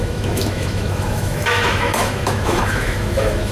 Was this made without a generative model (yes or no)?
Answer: no